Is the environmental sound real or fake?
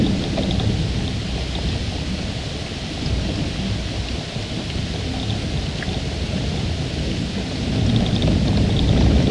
real